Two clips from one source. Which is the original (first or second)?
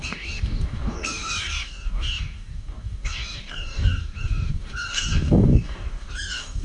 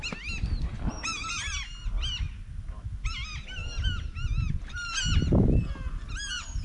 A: second